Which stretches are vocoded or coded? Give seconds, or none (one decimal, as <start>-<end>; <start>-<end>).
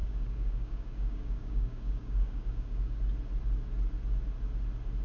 0.0-3.0